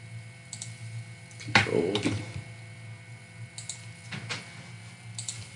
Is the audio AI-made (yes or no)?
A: no